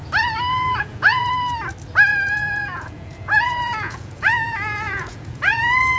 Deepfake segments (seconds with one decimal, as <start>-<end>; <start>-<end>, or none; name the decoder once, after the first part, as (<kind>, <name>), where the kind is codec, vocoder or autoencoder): 0.5-1.3 (vocoder, Vocos); 2.1-6.0